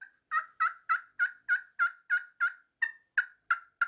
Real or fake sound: real